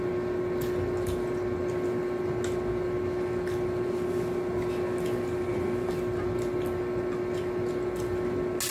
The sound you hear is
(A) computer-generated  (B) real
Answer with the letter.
B